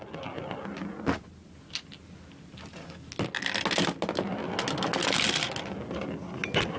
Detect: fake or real real